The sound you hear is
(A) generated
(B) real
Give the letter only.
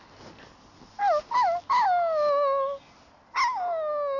B